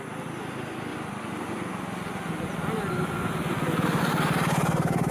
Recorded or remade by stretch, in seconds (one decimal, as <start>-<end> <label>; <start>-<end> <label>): 0.0-5.1 recorded